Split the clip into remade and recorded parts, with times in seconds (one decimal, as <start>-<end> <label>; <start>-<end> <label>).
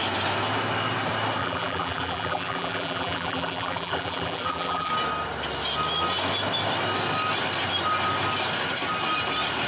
0.0-1.4 recorded; 1.4-4.9 remade; 4.9-9.7 recorded